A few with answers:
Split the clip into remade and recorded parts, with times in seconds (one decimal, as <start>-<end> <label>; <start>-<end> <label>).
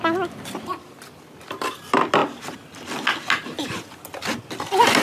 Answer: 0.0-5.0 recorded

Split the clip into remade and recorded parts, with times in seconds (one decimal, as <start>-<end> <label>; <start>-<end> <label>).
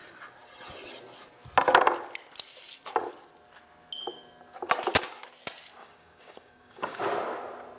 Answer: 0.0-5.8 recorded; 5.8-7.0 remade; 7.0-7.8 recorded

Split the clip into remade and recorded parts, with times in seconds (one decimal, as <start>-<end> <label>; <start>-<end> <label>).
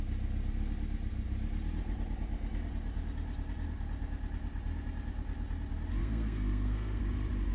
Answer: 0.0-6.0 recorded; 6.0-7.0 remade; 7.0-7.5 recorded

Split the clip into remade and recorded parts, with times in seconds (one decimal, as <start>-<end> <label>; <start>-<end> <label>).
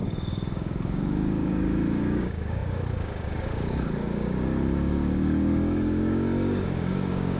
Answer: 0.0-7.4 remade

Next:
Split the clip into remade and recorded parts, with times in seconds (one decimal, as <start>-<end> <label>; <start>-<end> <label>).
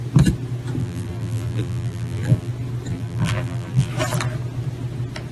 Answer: 0.0-0.8 recorded; 0.8-2.5 remade; 2.5-2.9 recorded; 2.9-3.9 remade; 3.9-5.3 recorded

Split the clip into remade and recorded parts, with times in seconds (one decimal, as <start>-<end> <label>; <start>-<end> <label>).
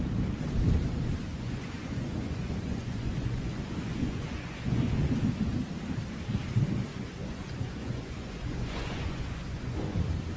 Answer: 0.0-1.3 recorded; 1.3-4.9 remade; 4.9-6.9 recorded; 6.9-10.0 remade; 10.0-10.4 recorded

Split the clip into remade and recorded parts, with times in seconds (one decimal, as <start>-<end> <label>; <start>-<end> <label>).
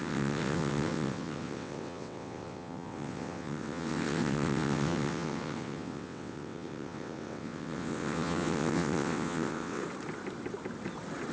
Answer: 0.0-9.8 remade; 9.8-11.3 recorded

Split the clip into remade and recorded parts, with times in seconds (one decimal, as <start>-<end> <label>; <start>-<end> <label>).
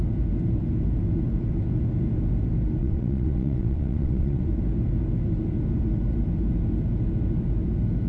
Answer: 0.0-2.8 recorded; 2.8-4.4 remade; 4.4-8.1 recorded